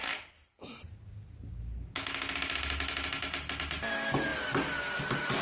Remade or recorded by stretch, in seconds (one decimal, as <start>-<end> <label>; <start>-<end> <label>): 0.0-5.4 recorded